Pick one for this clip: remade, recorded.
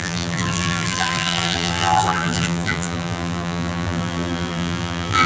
remade